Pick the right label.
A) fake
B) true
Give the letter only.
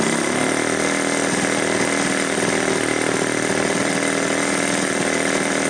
B